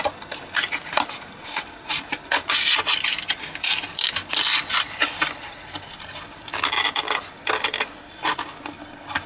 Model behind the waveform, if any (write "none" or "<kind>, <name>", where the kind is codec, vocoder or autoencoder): none